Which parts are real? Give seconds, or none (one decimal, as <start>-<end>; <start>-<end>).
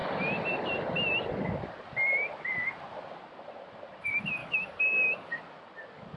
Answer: 0.0-4.4; 5.4-6.2